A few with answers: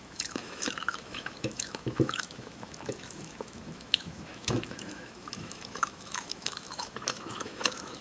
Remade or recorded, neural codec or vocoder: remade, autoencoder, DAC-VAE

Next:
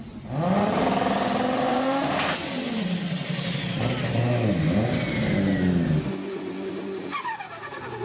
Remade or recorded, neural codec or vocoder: recorded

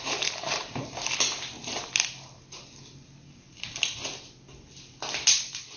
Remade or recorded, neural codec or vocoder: recorded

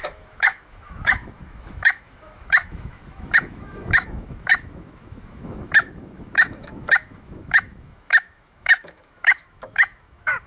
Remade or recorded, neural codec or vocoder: remade, autoencoder, DAC-VAE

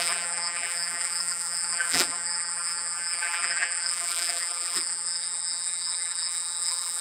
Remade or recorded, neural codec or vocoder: remade, vocoder, BigVGAN v2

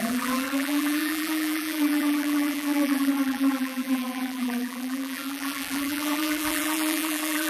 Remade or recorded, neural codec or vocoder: remade, vocoder, BigVGAN v2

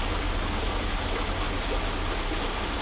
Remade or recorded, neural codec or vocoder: recorded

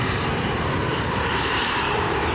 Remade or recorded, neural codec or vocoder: remade, vocoder, BigVGAN v2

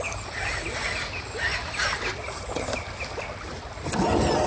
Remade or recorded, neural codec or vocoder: recorded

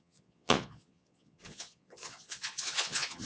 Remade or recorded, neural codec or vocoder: remade, vocoder, Vocos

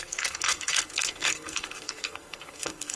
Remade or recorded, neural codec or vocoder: remade, codec, SNAC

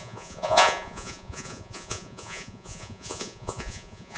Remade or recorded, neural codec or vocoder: remade, vocoder, Vocos